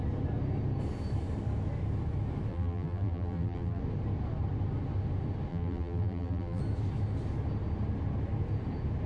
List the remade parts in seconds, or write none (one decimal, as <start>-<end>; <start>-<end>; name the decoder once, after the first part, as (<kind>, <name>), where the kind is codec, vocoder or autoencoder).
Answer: 2.5-3.8 (vocoder, BigVGAN v2); 5.5-6.6